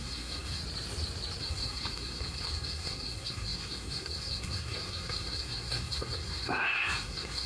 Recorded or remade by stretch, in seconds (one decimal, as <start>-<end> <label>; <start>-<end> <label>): 0.0-0.6 remade; 0.6-1.4 recorded; 1.4-7.5 remade